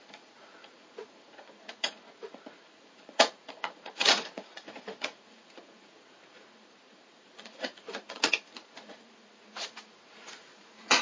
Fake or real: fake